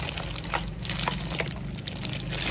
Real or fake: real